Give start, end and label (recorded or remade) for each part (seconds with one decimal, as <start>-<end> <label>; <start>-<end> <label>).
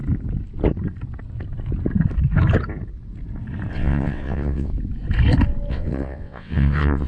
0.0-3.7 recorded; 3.7-4.7 remade; 4.7-5.7 recorded; 5.7-7.1 remade